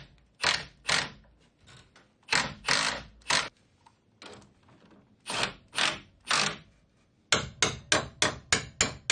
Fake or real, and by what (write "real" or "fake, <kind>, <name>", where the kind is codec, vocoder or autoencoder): real